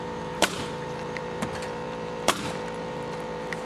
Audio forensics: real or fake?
fake